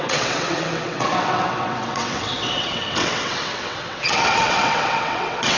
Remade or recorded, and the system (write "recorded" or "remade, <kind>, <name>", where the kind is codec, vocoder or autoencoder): remade, vocoder, WaveNeXt